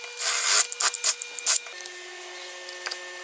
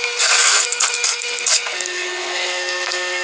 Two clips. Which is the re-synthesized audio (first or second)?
second